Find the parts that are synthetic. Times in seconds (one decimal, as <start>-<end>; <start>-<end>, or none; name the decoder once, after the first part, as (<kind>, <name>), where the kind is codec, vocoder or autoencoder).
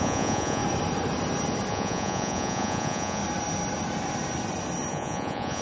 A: 0.0-0.6 (vocoder, Vocos); 1.7-3.2; 4.9-5.6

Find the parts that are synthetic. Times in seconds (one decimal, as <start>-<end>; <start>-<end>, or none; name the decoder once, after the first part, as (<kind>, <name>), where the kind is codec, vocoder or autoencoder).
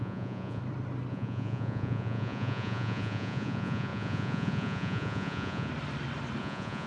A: 0.0-0.6 (vocoder, Vocos); 1.1-5.7; 6.4-6.9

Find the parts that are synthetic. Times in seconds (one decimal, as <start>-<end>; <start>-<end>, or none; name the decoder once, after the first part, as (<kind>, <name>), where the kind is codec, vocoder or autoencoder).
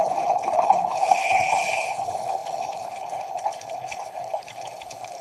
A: 0.0-5.2 (codec, HILCodec)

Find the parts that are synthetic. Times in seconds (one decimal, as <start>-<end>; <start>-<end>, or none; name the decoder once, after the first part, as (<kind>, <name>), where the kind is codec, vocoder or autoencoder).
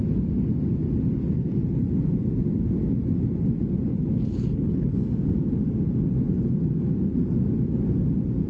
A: 3.9-4.9 (codec, HILCodec)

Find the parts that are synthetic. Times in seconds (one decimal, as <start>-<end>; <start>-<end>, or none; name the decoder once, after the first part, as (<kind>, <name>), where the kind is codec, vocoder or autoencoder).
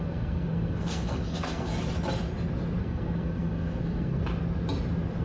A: 0.0-1.7 (codec, SNAC); 2.8-4.2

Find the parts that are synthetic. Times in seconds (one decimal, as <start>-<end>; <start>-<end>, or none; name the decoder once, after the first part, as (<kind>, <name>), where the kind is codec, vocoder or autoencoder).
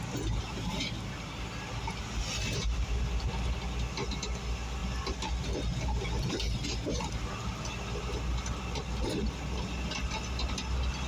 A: none